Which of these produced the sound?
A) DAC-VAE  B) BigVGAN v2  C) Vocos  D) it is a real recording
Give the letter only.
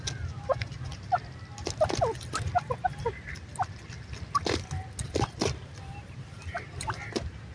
D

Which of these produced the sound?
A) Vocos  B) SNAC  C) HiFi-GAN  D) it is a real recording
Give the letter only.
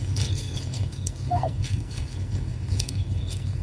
B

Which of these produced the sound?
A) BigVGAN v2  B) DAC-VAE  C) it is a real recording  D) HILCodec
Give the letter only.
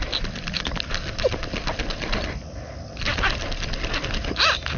C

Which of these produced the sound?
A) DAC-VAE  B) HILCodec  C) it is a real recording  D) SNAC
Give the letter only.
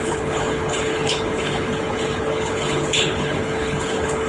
B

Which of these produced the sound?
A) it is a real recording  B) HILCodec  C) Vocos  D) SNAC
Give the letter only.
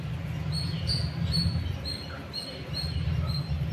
A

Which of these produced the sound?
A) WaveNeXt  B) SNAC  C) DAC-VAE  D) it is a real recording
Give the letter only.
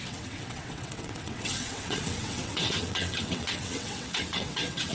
A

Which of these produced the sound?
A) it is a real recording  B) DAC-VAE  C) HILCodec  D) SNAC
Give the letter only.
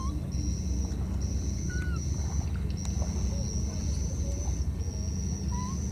A